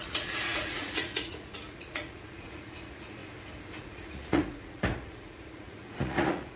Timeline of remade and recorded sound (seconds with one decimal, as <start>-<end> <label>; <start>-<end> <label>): 0.0-3.2 remade; 3.2-3.8 recorded; 3.8-6.6 remade